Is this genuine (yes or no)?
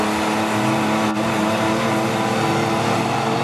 yes